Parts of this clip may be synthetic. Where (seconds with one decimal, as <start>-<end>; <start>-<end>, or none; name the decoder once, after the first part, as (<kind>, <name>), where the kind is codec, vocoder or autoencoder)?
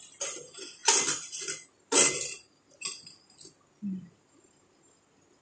none